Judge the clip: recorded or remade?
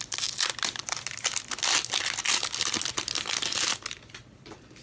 recorded